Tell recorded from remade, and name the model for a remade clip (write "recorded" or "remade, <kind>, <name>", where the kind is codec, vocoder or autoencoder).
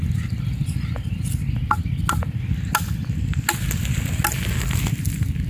recorded